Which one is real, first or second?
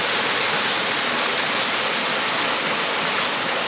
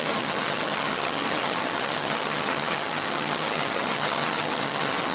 first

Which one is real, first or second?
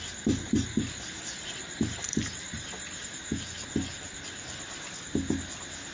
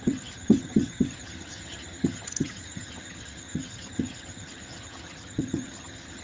first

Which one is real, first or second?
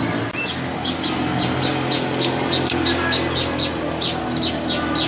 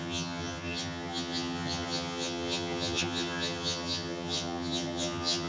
first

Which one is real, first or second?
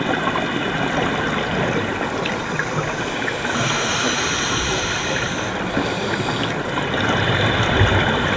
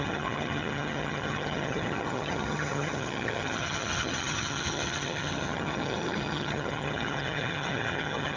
first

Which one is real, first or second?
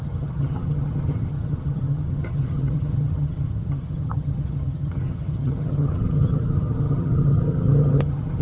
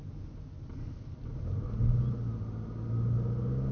second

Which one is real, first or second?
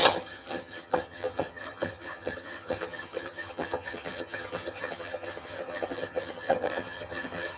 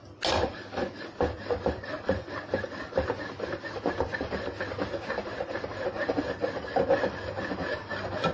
second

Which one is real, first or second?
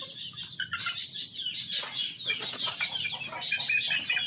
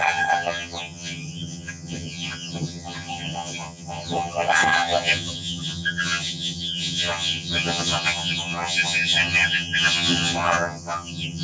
first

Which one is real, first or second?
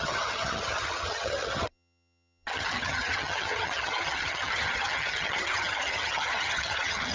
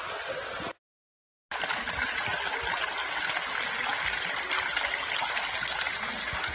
second